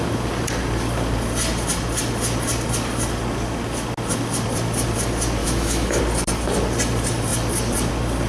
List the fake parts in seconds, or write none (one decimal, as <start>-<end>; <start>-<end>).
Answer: 5.4-6.0